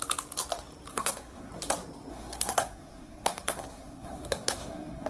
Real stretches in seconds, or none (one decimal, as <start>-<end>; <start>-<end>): 0.0-0.9; 1.5-2.1